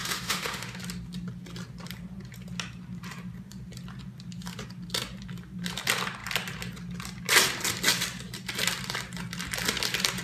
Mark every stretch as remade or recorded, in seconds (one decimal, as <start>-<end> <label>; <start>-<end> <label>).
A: 0.0-0.8 remade; 0.8-10.2 recorded